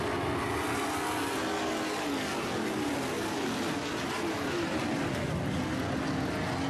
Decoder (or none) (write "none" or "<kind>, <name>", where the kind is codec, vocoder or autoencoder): none